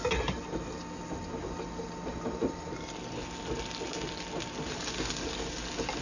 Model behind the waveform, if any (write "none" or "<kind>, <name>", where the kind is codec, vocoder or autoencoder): none